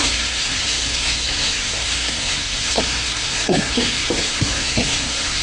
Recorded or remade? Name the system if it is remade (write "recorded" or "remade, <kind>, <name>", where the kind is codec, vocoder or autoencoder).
remade, codec, SNAC